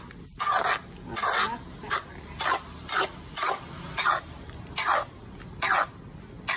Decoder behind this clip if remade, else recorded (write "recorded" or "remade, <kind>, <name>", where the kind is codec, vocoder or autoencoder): recorded